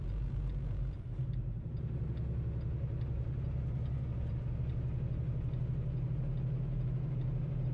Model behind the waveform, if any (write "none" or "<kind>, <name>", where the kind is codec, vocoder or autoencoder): none